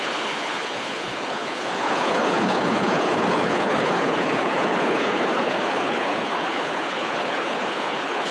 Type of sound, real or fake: fake